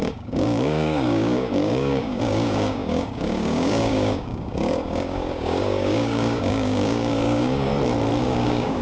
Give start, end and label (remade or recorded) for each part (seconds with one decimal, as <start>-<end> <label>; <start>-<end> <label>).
0.0-7.7 remade; 7.7-8.2 recorded; 8.2-8.8 remade